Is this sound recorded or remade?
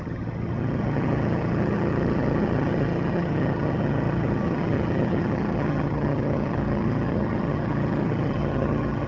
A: remade